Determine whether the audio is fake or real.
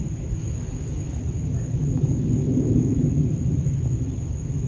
fake